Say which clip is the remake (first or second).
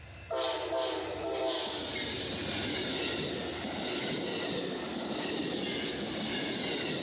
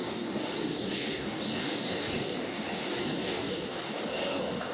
second